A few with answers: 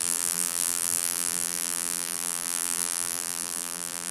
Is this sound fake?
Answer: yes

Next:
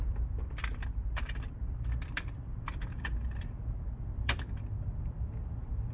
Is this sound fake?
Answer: yes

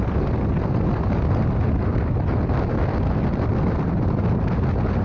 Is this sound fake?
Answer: no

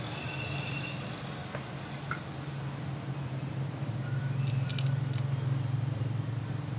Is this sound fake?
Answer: no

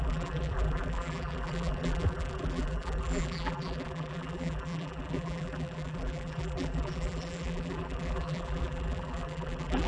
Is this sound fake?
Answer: yes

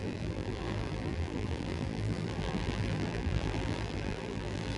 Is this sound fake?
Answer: yes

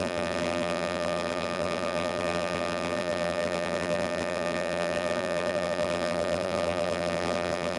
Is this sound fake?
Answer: yes